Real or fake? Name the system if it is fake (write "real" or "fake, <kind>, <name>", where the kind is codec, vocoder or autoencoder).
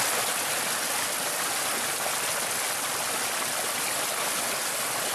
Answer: real